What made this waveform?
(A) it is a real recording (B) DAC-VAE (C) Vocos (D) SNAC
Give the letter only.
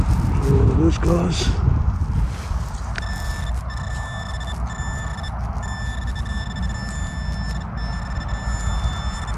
A